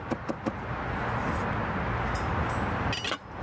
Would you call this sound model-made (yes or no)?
no